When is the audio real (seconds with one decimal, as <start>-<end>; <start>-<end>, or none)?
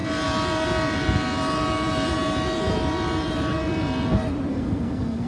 0.0-4.5